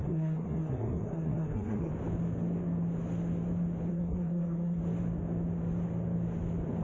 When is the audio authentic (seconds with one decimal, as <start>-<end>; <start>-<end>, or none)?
1.9-3.9; 4.8-6.8